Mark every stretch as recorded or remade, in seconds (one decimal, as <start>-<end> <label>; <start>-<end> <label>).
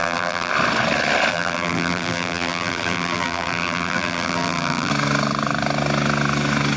0.0-0.5 remade; 0.5-1.3 recorded; 1.3-4.9 remade; 4.9-6.8 recorded